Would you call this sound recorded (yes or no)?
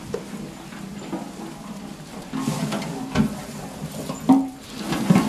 no